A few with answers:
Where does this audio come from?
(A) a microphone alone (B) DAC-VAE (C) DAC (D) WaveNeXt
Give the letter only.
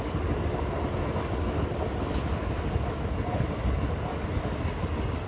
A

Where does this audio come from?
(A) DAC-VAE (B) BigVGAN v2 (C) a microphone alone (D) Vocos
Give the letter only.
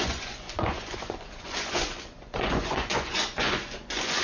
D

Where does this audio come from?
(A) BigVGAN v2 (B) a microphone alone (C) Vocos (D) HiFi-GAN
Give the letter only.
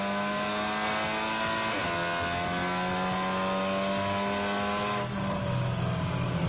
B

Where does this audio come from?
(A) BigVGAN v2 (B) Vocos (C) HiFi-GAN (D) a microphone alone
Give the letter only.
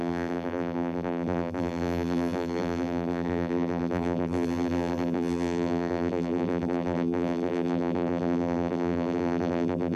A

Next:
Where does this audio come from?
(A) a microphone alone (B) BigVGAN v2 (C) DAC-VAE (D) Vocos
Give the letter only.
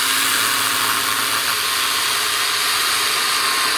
A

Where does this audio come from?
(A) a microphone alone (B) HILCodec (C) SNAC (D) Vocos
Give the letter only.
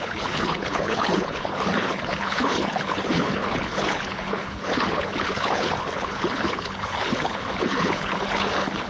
B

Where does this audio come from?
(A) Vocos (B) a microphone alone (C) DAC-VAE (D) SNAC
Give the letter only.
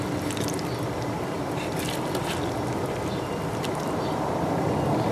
B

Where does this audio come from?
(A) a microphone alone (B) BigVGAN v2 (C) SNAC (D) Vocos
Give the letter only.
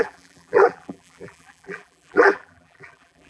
B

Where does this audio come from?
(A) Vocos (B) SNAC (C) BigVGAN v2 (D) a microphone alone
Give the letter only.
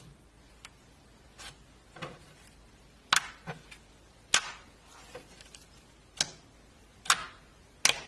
D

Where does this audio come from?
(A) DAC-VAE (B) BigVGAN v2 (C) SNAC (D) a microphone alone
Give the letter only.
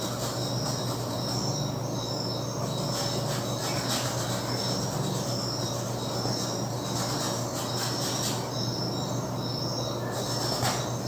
D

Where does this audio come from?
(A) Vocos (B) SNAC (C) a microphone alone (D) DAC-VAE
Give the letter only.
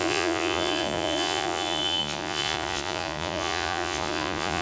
A